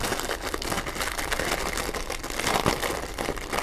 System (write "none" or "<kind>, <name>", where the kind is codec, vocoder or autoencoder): none